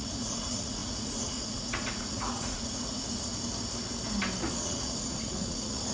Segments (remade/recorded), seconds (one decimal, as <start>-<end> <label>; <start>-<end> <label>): 0.0-3.3 remade; 3.3-4.5 recorded; 4.5-5.9 remade